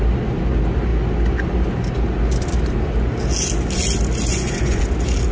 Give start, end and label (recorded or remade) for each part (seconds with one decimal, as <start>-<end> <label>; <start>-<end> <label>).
0.0-4.3 recorded; 4.3-4.8 remade; 4.8-5.3 recorded